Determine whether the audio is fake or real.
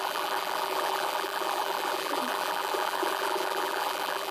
fake